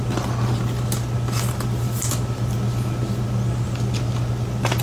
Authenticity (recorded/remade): recorded